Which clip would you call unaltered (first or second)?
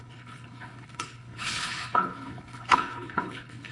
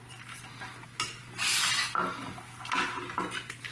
second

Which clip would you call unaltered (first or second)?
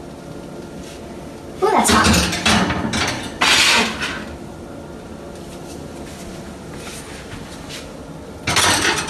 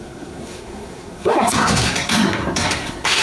first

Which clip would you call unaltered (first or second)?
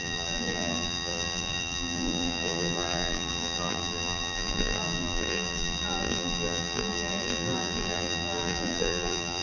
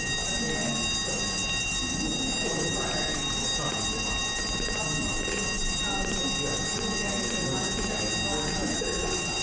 second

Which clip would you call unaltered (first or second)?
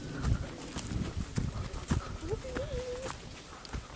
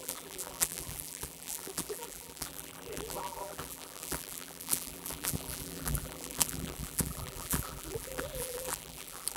first